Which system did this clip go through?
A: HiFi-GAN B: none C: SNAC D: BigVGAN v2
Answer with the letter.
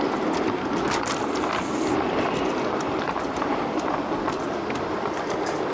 B